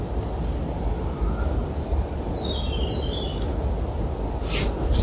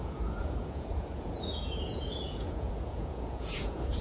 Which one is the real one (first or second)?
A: first